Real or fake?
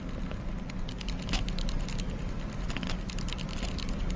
real